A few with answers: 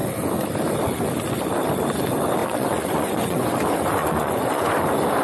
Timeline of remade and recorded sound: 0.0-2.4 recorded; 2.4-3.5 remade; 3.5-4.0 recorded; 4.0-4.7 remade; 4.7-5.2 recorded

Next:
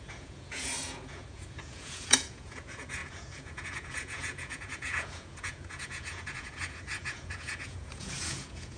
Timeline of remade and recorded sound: 0.0-8.8 remade

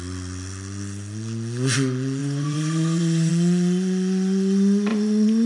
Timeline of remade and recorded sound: 0.0-2.2 recorded; 2.2-3.3 remade; 3.3-4.9 recorded; 4.9-5.5 remade

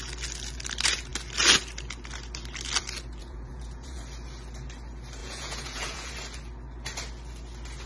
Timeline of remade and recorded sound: 0.0-3.2 recorded; 3.2-4.0 remade; 4.0-5.2 recorded; 5.2-6.1 remade; 6.1-7.9 recorded

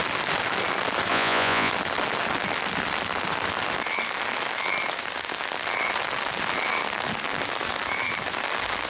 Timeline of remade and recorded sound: 0.0-1.1 recorded; 1.1-1.7 remade; 1.7-8.9 recorded

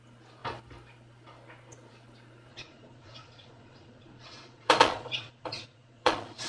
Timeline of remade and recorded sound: 0.0-2.5 recorded; 2.5-6.5 remade

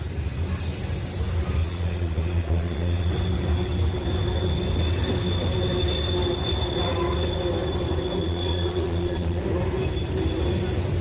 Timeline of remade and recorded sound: 0.0-1.6 recorded; 1.6-3.1 remade; 3.1-8.2 recorded; 8.2-9.4 remade; 9.4-11.0 recorded